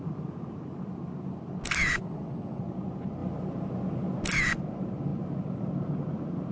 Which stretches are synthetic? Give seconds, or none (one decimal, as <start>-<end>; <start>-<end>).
2.0-2.6